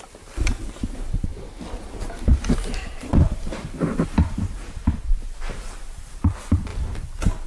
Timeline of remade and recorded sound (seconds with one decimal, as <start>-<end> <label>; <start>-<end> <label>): 0.0-2.3 recorded; 2.3-6.2 remade; 6.2-7.5 recorded